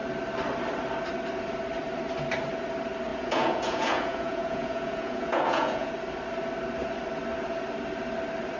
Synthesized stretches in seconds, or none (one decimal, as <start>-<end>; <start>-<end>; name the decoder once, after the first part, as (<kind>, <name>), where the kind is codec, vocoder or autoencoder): 3.1-5.9 (vocoder, Vocos)